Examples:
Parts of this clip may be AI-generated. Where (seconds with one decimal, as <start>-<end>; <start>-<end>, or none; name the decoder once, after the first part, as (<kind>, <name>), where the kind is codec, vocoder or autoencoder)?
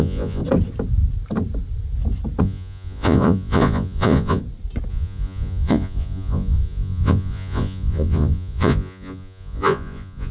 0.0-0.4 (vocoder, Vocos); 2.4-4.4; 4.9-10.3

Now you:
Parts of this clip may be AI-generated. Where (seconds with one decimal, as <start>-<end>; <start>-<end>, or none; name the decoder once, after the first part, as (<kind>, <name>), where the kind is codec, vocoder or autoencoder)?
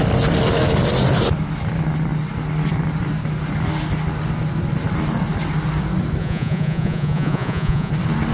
6.2-7.9 (vocoder, Vocos)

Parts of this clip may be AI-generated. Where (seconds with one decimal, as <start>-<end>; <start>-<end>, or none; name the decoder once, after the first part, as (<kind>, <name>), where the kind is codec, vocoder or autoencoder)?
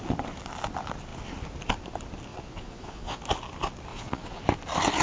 2.3-3.2 (vocoder, Vocos); 3.9-4.4